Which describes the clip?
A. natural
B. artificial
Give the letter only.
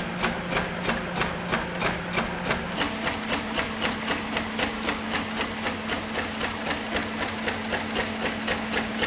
A